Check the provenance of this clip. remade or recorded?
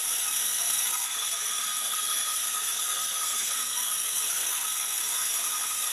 remade